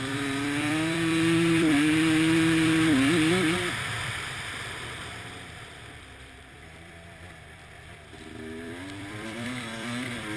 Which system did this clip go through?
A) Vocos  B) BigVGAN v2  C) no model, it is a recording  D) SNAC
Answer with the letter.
B